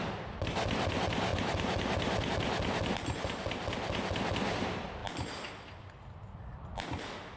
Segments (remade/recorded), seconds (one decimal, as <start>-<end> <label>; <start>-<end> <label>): 0.0-1.3 recorded; 1.3-2.3 remade; 2.3-7.4 recorded